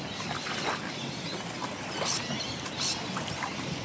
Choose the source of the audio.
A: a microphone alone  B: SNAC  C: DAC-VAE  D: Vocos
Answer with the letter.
A